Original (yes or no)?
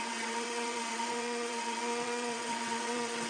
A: no